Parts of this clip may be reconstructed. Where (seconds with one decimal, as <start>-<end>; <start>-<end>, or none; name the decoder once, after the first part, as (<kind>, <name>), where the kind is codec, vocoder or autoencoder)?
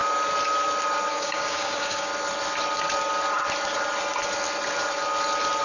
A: 1.1-2.1 (codec, DAC)